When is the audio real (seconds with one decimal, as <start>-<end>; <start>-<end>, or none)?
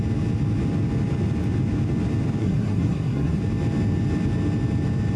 0.0-2.4; 3.4-5.2